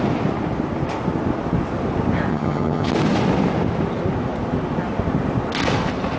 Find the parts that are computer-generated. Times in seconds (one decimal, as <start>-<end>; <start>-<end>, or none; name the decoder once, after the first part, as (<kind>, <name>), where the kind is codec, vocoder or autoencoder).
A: 2.3-2.9 (vocoder, HiFi-GAN)